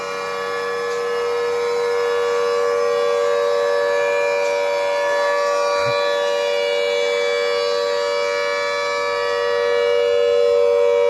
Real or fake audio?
real